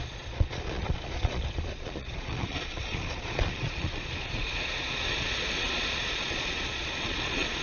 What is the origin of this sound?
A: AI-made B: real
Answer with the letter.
A